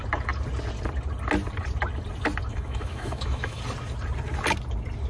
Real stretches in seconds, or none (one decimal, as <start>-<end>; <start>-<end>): 0.0-2.5; 3.6-5.1